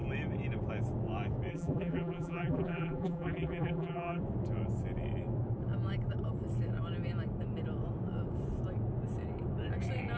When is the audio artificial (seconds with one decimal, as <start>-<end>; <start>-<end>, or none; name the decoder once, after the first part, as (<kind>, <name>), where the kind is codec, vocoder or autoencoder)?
1.5-4.2 (vocoder, BigVGAN v2)